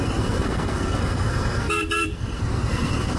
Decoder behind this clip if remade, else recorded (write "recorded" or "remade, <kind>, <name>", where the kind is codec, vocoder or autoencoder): remade, codec, SNAC